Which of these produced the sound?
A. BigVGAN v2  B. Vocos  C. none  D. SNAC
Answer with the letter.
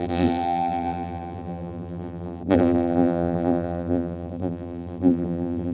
A